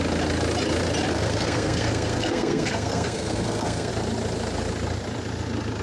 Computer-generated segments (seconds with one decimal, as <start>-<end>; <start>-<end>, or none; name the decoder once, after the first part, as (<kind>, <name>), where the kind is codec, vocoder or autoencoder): 1.1-3.9 (codec, SNAC)